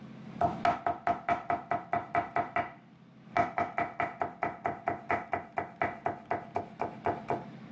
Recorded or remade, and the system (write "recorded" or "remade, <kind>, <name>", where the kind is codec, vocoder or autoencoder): recorded